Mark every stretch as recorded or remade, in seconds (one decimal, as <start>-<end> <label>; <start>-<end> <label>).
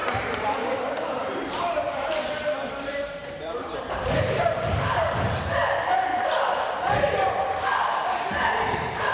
0.0-6.1 remade; 6.1-8.5 recorded; 8.5-9.1 remade